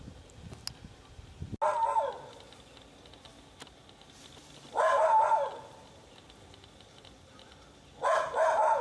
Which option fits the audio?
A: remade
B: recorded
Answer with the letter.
B